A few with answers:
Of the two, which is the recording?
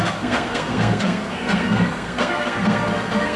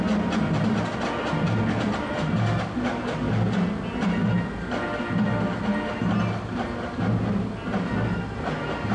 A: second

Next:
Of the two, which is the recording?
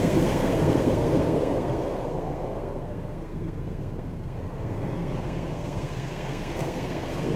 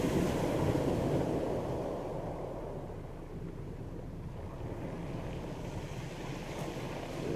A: second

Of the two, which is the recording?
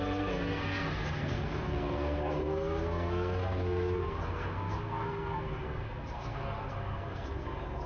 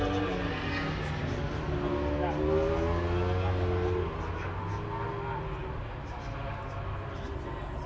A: second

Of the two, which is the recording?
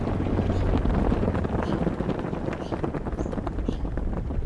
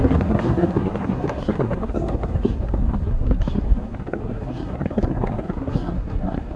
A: first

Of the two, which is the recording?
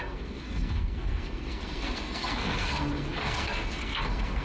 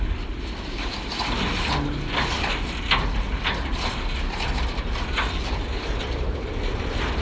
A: second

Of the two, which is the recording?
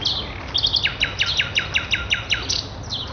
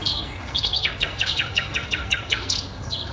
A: first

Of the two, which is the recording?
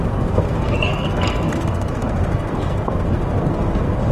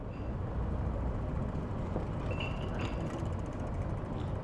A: second